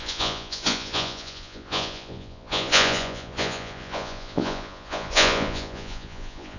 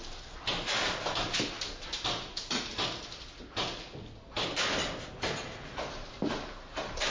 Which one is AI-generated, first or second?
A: first